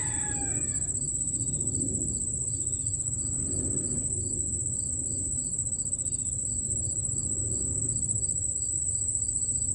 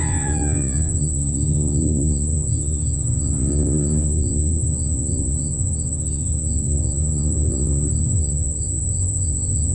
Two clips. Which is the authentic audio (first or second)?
first